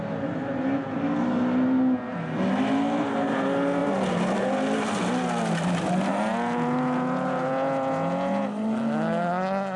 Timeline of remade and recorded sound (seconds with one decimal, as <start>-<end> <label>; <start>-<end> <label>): 0.0-9.8 recorded